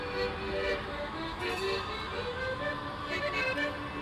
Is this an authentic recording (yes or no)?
yes